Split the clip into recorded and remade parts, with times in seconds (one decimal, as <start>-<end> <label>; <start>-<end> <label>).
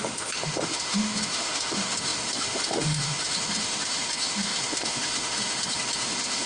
0.0-6.5 remade